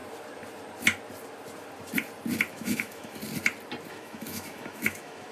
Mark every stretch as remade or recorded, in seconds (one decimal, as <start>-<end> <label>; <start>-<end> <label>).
0.0-2.5 recorded; 2.5-3.2 remade; 3.2-3.9 recorded; 3.9-5.3 remade